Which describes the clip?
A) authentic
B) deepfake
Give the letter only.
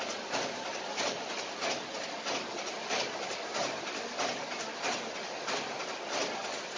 A